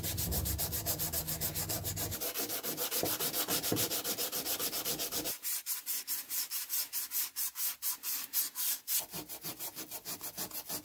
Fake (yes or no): yes